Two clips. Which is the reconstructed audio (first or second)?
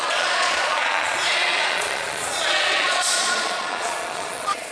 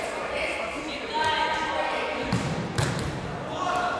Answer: first